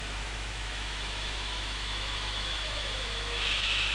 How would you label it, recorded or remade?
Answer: remade